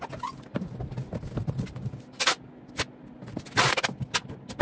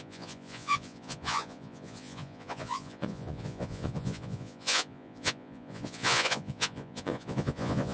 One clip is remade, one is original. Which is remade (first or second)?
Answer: second